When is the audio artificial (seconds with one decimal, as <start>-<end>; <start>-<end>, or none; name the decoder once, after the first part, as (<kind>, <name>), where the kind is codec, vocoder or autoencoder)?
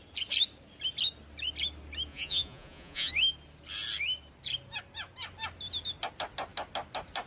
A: 2.1-3.1 (vocoder, Vocos)